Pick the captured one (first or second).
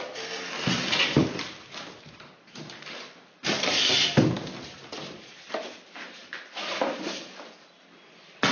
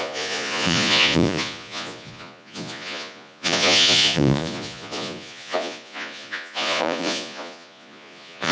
first